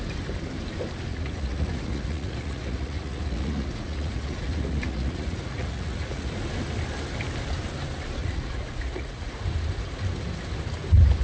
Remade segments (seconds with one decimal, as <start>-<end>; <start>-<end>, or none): 1.1-6.3; 8.2-9.3